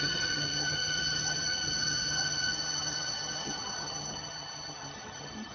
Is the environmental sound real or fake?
fake